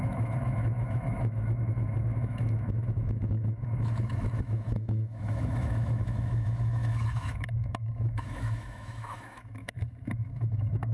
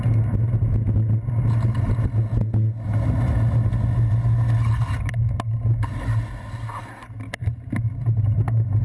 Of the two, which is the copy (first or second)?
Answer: first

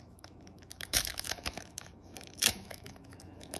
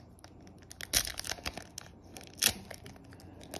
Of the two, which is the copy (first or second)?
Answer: first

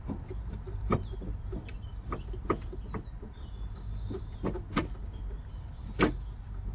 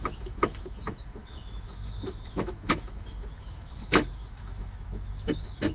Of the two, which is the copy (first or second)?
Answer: second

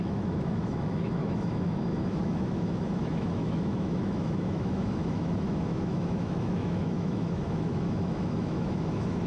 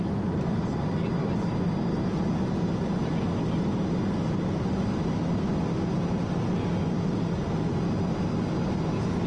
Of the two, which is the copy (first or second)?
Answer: first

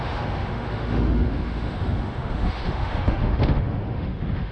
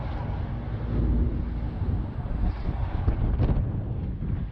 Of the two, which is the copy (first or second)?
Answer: first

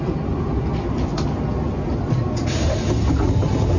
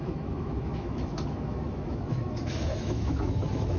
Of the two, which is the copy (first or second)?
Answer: second